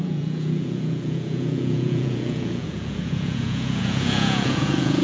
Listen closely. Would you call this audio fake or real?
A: fake